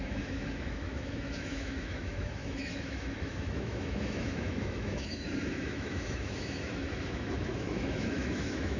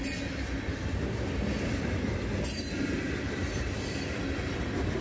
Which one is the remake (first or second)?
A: first